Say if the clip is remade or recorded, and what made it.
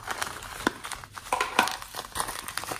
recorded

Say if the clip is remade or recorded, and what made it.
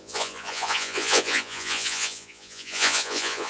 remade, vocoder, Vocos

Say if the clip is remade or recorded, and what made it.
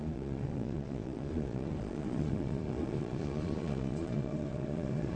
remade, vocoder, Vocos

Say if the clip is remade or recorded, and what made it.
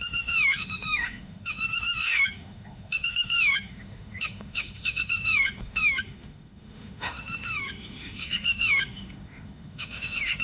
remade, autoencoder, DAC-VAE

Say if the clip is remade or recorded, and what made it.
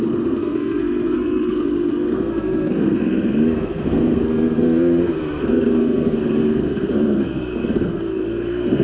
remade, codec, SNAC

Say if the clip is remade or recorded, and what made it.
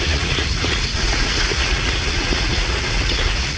remade, vocoder, Vocos